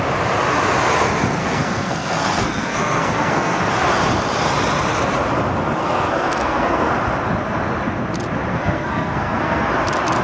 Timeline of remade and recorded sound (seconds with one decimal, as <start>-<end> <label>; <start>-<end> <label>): 0.0-1.4 recorded; 1.4-3.7 remade; 3.7-5.8 recorded; 5.8-6.9 remade; 6.9-8.5 recorded; 8.5-9.7 remade; 9.7-10.2 recorded